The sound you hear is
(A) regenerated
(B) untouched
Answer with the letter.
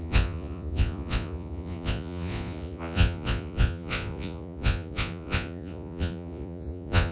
A